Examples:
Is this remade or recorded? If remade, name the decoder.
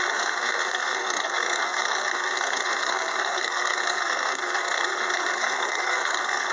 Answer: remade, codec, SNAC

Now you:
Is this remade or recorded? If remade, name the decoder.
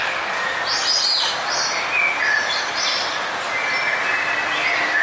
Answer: recorded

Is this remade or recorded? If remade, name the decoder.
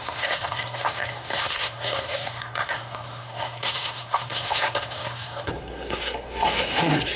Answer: remade, codec, SNAC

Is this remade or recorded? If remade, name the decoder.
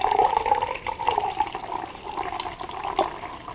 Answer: recorded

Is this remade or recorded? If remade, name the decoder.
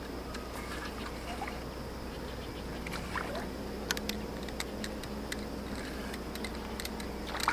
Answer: recorded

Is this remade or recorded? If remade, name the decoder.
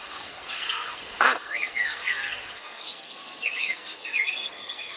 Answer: remade, codec, SNAC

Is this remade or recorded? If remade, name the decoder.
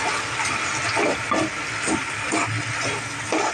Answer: recorded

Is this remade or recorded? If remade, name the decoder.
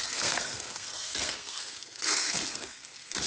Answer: remade, codec, SNAC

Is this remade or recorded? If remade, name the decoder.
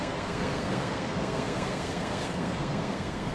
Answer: remade, codec, SNAC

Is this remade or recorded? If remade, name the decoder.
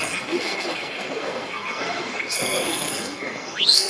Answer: remade, codec, SNAC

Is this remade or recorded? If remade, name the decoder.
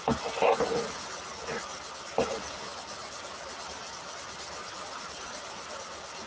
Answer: recorded